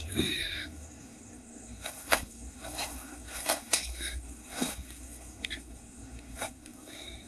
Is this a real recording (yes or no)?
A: no